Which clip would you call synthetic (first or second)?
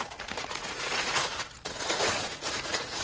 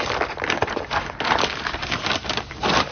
first